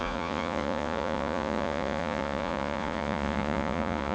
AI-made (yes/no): yes